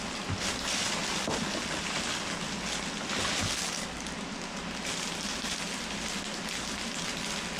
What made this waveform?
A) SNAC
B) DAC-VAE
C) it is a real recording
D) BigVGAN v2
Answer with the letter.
C